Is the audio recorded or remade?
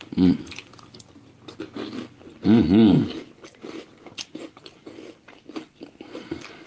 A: recorded